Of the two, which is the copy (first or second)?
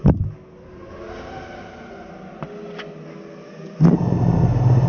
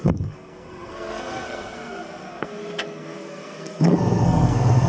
second